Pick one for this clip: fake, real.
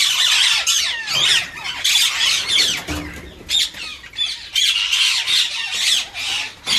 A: real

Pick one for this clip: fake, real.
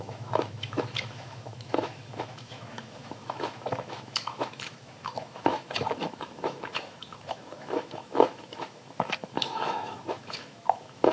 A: fake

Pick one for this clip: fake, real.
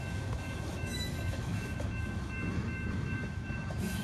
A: fake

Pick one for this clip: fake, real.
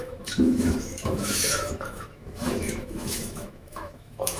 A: fake